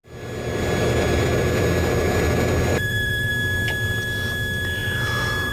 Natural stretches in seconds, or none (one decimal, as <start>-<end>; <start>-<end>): 0.0-2.7; 3.3-5.5